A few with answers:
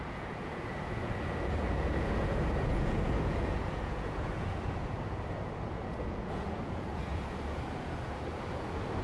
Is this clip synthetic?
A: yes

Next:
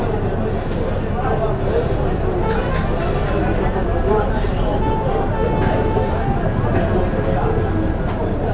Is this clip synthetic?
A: no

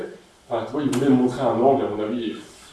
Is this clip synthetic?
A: no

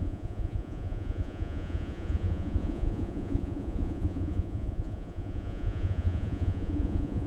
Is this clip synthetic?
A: yes